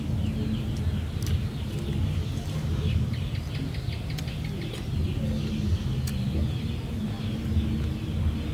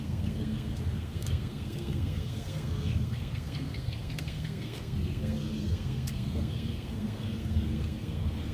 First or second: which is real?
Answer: first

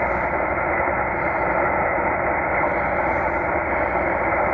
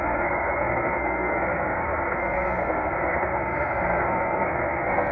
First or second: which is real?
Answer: first